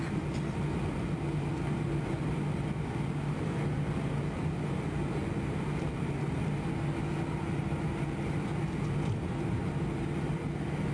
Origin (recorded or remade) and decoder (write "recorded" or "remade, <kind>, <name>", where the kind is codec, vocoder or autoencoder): recorded